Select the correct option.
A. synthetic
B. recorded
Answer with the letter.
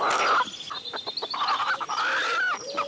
B